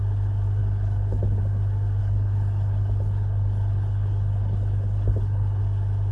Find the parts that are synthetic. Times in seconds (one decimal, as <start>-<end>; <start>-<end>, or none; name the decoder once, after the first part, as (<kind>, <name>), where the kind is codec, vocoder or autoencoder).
0.6-1.4 (codec, HILCodec); 2.0-5.6